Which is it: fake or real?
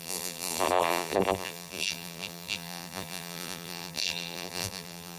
fake